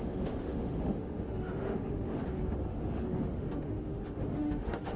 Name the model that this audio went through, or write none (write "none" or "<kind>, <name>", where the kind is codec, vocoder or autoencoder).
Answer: autoencoder, DAC-VAE